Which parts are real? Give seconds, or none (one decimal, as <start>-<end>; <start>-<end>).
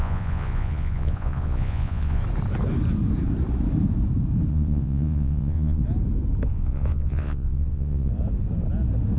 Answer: 2.2-4.5; 5.8-6.5; 8.1-9.2